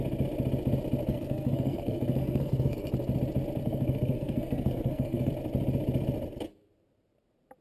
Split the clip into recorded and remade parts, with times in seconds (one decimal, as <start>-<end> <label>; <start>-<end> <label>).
0.0-1.1 recorded; 1.1-2.9 remade; 2.9-3.6 recorded; 3.6-5.3 remade; 5.3-7.6 recorded